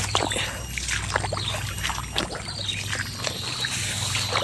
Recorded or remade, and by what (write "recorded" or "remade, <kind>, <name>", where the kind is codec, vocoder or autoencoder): recorded